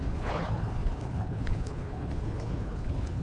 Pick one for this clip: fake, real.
fake